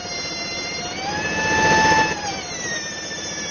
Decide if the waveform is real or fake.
real